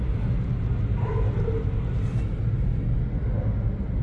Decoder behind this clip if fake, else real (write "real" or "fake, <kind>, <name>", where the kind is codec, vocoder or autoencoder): real